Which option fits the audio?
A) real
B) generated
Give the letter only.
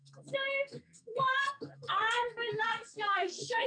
B